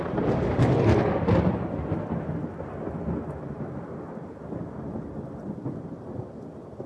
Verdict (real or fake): real